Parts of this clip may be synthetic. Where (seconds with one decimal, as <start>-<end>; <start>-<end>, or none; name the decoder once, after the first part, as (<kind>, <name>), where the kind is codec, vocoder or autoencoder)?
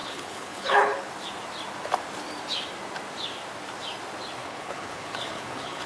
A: 0.0-1.1 (codec, HILCodec); 4.4-5.9